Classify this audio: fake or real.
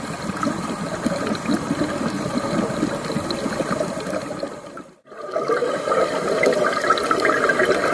real